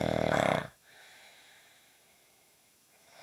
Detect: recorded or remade remade